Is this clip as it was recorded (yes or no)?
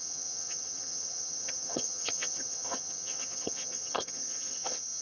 no